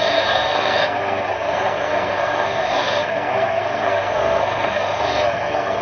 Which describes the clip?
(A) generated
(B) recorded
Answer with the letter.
A